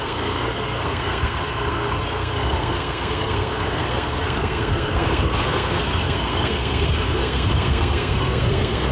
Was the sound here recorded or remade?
remade